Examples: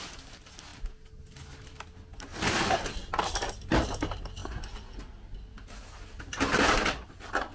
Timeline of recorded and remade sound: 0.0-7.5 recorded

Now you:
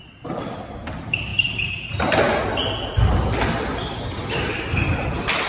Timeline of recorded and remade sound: 0.0-5.5 recorded

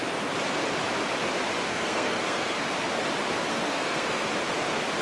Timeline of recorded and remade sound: 0.0-1.7 recorded; 1.7-2.7 remade; 2.7-3.5 recorded; 3.5-4.3 remade; 4.3-5.0 recorded

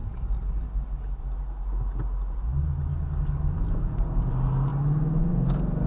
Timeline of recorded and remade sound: 0.0-5.9 recorded

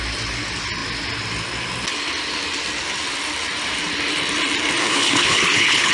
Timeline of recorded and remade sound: 0.0-4.8 recorded; 4.8-5.9 remade

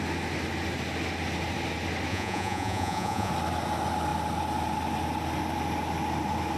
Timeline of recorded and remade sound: 0.0-2.1 recorded; 2.1-3.3 remade; 3.3-6.6 recorded

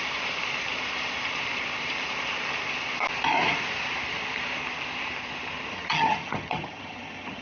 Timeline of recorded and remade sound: 0.0-5.7 recorded; 5.7-7.4 remade